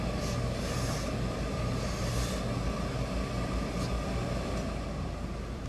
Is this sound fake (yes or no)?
no